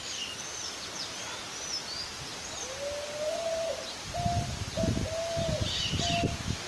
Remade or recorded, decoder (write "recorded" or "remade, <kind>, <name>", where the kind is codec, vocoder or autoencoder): recorded